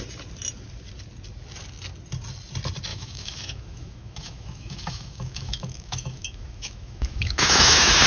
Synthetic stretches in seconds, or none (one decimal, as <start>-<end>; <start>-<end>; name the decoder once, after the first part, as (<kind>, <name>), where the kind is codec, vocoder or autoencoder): 2.9-8.1 (autoencoder, DAC-VAE)